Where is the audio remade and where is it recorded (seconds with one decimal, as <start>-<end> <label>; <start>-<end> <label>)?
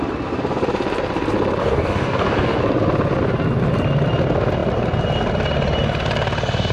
0.0-1.6 recorded; 1.6-2.6 remade; 2.6-6.7 recorded